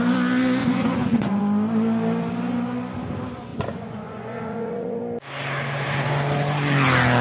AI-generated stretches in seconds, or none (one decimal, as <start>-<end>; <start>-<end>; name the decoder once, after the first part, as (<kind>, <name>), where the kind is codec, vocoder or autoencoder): 0.6-1.4 (vocoder, Vocos); 3.5-5.0